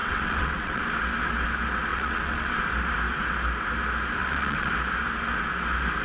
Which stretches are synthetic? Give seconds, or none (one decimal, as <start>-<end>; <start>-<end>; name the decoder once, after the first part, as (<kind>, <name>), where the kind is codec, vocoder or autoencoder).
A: 0.0-0.8 (vocoder, WaveNeXt); 1.9-2.6; 4.2-4.7